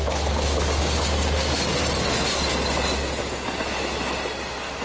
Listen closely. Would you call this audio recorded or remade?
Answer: recorded